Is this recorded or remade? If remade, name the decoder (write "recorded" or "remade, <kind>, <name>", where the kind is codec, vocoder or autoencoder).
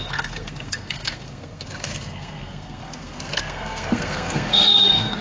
remade, codec, SNAC